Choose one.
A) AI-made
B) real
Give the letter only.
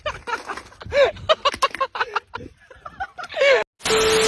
B